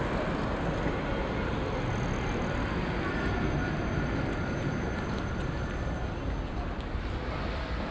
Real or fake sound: real